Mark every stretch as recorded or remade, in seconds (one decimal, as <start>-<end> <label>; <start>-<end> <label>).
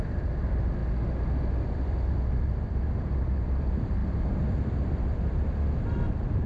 0.0-0.8 remade; 0.8-1.7 recorded; 1.7-4.0 remade; 4.0-4.8 recorded; 4.8-6.5 remade